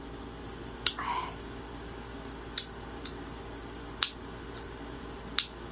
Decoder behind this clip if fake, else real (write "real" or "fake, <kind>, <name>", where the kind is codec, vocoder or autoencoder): fake, vocoder, BigVGAN v2